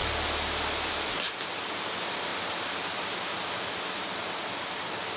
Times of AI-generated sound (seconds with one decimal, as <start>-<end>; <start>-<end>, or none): none